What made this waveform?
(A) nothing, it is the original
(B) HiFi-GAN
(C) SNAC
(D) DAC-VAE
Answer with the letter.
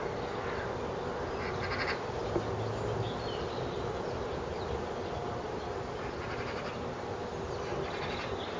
A